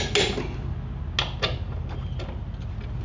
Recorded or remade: recorded